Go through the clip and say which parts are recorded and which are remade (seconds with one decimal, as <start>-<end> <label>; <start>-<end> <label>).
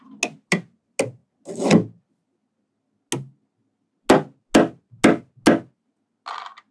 0.0-6.7 recorded